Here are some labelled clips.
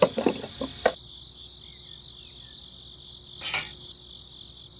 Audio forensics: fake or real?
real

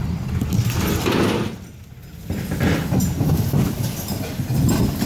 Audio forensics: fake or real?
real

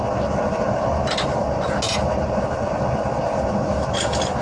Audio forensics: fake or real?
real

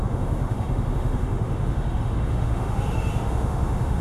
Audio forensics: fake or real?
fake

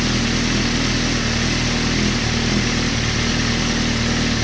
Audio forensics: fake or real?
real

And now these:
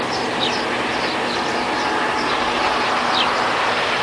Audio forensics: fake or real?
real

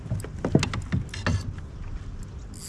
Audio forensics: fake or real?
real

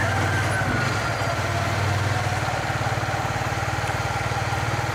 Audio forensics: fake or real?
real